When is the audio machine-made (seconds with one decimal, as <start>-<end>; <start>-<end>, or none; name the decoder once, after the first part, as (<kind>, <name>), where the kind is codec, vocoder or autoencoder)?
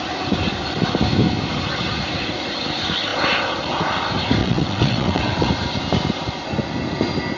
4.4-5.5 (vocoder, WaveNeXt)